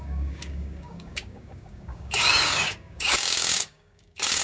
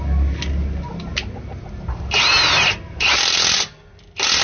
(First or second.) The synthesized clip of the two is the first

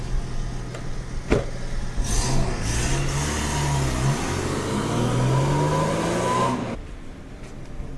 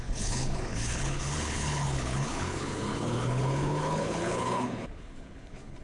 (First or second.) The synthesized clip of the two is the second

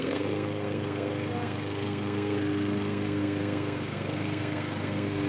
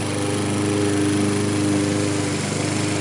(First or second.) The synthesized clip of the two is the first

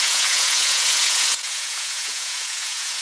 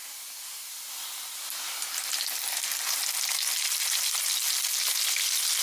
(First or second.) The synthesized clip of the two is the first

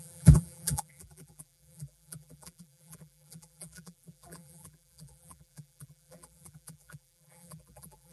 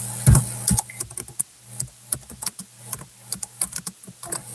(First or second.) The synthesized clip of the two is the first